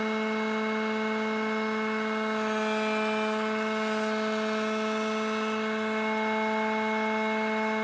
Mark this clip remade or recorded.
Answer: recorded